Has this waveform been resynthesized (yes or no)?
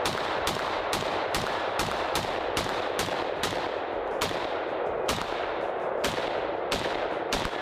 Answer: no